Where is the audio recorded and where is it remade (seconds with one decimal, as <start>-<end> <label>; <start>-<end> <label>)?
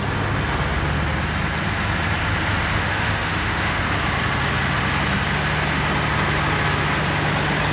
0.0-2.7 recorded; 2.7-3.8 remade; 3.8-7.7 recorded